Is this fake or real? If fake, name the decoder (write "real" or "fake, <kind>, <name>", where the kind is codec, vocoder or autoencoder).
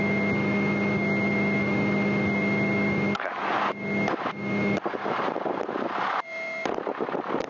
real